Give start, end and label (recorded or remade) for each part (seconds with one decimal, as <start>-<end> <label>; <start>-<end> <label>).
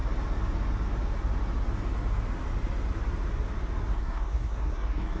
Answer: 0.0-3.9 recorded; 3.9-5.2 remade